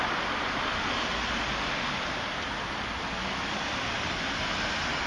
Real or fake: real